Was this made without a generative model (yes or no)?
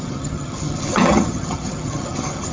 no